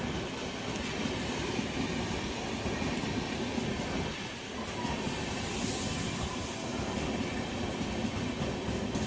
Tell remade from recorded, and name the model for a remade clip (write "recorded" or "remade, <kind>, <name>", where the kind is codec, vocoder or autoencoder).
recorded